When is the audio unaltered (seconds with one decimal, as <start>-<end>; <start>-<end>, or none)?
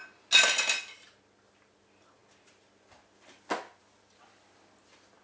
0.0-5.2